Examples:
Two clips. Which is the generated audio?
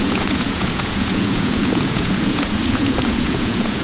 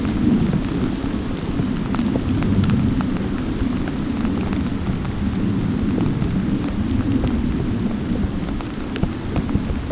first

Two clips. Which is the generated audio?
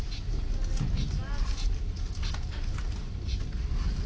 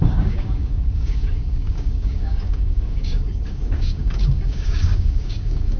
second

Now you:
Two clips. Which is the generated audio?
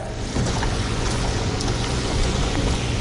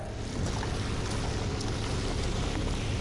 first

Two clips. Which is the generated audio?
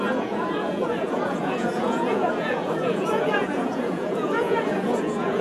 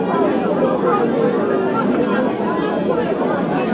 first